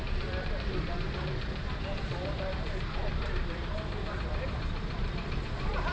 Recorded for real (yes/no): no